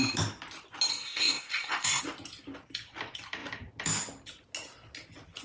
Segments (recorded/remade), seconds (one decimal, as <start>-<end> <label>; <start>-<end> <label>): 0.0-0.9 recorded; 0.9-2.0 remade; 2.0-5.4 recorded